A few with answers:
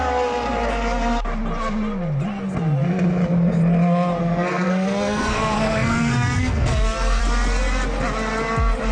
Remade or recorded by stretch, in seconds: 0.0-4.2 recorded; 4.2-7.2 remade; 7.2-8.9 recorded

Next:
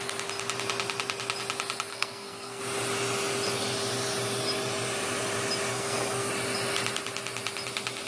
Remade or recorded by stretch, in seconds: 0.0-1.9 recorded; 1.9-2.6 remade; 2.6-5.7 recorded; 5.7-6.3 remade; 6.3-8.1 recorded